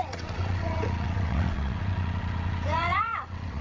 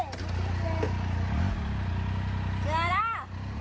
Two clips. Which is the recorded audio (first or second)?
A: second